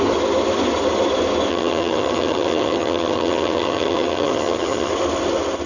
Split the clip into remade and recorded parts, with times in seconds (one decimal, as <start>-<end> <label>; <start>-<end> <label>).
0.0-1.5 recorded; 1.5-4.9 remade; 4.9-5.7 recorded